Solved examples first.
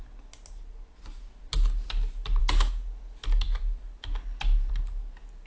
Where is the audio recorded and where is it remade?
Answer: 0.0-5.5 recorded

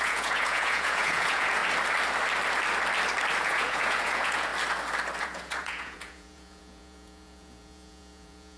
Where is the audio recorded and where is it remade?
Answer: 0.0-1.6 remade; 1.6-3.4 recorded; 3.4-4.5 remade; 4.5-5.2 recorded; 5.2-8.6 remade

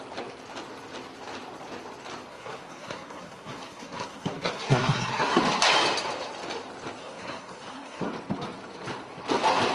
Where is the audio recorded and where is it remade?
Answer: 0.0-2.3 recorded; 2.3-5.4 remade; 5.4-7.0 recorded; 7.0-8.1 remade; 8.1-9.7 recorded